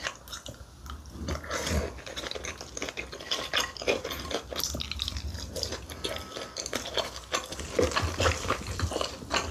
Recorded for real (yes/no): yes